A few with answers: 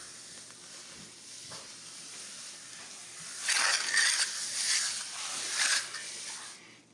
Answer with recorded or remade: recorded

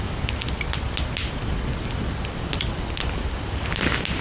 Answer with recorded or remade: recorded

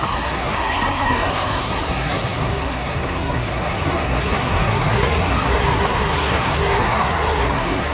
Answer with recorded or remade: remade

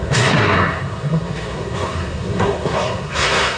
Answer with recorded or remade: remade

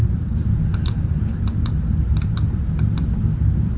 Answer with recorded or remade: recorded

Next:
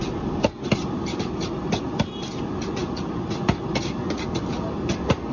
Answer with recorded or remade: recorded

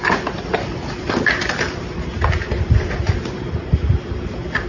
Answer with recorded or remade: recorded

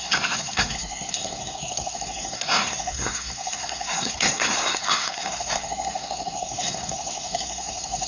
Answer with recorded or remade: remade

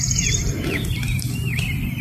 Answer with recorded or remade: remade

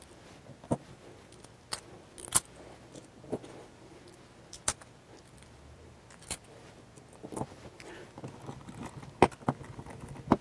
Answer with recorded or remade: recorded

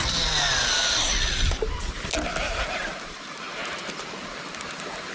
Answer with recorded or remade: recorded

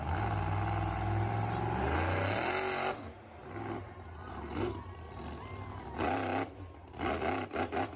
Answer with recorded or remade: recorded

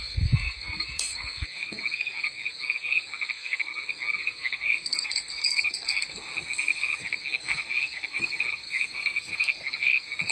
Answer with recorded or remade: remade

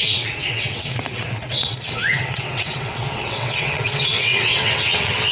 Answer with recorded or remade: remade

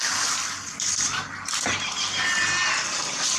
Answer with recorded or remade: recorded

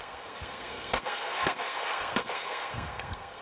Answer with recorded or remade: remade